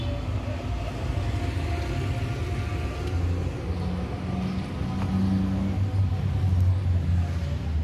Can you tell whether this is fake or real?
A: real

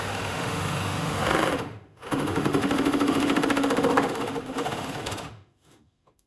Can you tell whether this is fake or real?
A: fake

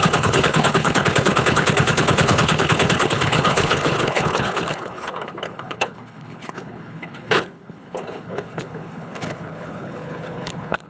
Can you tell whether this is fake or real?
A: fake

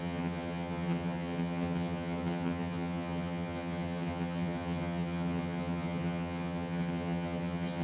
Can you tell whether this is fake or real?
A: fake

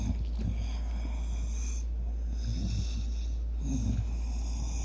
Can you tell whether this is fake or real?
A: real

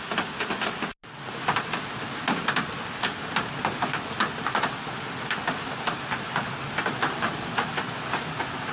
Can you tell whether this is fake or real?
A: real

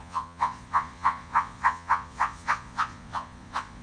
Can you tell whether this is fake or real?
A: fake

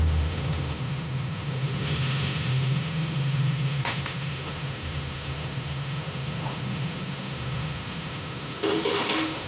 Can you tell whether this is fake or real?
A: fake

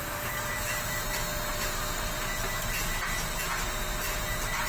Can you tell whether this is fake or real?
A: real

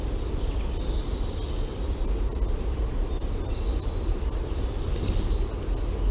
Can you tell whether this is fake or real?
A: real